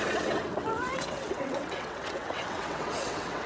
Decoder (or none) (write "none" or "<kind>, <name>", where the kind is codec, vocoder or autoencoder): vocoder, WaveNeXt